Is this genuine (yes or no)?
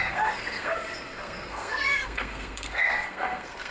no